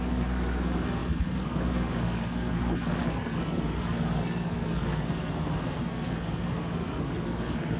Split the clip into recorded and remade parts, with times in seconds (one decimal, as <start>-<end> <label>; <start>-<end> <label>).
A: 0.0-7.8 remade